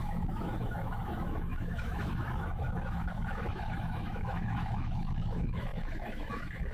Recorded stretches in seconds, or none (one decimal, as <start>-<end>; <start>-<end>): none